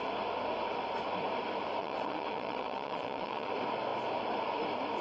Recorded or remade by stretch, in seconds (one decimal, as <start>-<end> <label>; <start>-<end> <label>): 0.0-1.8 recorded; 1.8-3.5 remade; 3.5-5.0 recorded

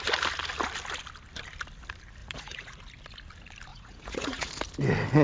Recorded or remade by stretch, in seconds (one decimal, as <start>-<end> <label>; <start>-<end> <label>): 0.0-2.2 recorded; 2.2-2.8 remade; 2.8-3.7 recorded; 3.7-4.5 remade; 4.5-5.2 recorded

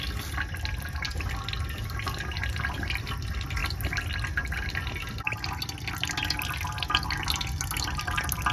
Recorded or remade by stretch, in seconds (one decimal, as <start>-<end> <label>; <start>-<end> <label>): 0.0-8.5 recorded

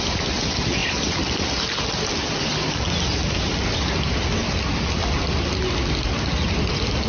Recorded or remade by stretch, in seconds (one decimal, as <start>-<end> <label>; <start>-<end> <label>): 0.0-7.1 recorded

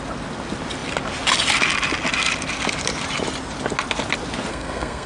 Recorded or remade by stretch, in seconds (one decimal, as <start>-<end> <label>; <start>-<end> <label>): 0.0-4.5 recorded; 4.5-5.1 remade

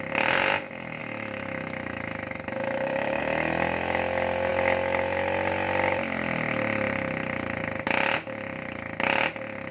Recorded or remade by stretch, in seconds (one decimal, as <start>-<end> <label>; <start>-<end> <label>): 0.0-1.0 recorded; 1.0-3.2 remade; 3.2-9.7 recorded

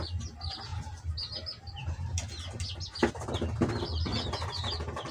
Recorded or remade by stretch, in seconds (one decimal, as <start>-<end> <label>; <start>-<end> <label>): 0.0-5.1 recorded